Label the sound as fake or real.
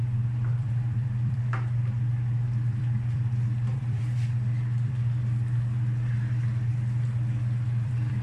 fake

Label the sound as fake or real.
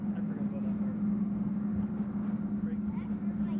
real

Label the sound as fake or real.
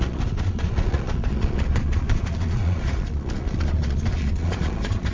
fake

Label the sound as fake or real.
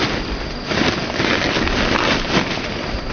real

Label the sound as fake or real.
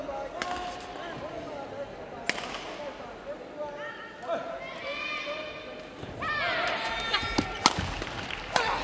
real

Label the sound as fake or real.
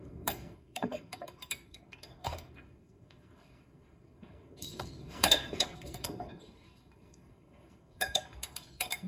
fake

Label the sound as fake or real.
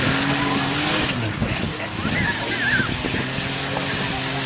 real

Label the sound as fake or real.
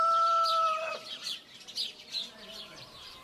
fake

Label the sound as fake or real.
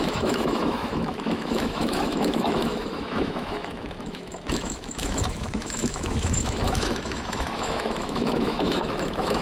fake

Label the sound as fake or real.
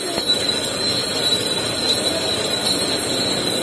real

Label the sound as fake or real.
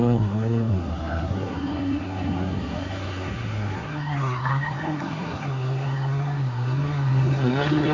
fake